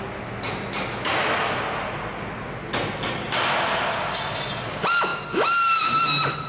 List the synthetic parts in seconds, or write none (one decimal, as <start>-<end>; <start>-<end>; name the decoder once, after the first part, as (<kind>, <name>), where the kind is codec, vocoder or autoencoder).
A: none